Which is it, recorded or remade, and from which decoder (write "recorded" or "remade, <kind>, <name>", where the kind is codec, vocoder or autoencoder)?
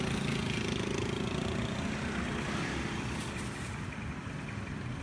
recorded